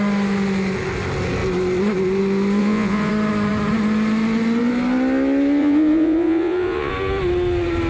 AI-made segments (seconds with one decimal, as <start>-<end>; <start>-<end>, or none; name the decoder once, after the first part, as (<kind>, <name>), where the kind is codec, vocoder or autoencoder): 2.6-3.1 (vocoder, Vocos); 5.6-6.9